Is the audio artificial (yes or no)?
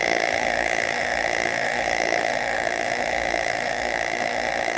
yes